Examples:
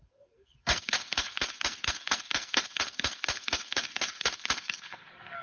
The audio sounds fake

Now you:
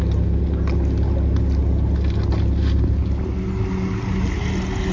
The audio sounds real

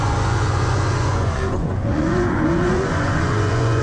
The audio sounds fake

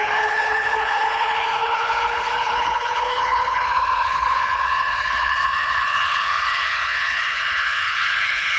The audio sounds fake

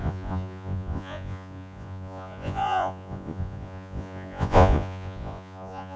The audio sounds fake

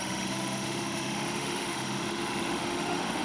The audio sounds fake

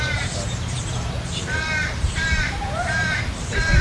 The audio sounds fake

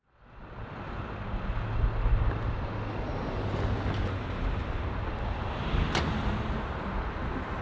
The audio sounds real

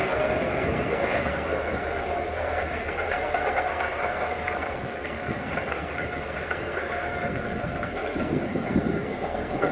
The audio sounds fake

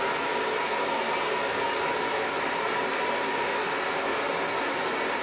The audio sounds real